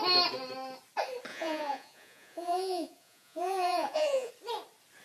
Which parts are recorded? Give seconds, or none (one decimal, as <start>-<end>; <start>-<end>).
0.0-1.3; 4.3-5.0